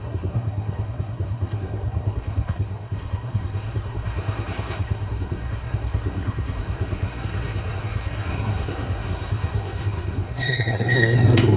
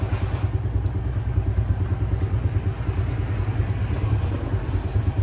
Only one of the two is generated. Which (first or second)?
first